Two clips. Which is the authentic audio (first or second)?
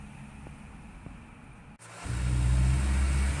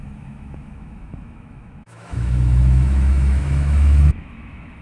first